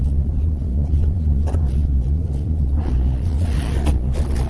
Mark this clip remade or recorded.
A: remade